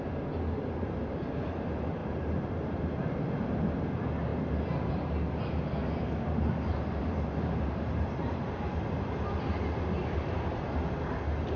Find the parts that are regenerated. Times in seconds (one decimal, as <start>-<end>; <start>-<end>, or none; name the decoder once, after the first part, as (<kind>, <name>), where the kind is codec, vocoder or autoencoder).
none